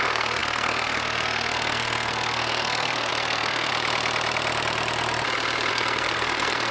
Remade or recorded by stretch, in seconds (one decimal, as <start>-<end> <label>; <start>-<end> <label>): 0.0-3.7 remade; 3.7-5.7 recorded; 5.7-6.7 remade